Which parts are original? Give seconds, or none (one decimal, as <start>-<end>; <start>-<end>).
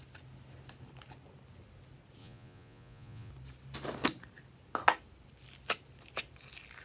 0.0-2.2; 3.3-6.8